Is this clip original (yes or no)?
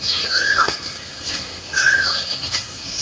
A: no